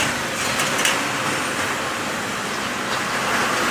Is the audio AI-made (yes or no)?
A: no